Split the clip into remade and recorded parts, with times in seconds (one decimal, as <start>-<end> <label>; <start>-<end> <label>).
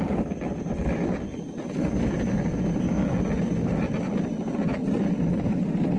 0.0-6.0 recorded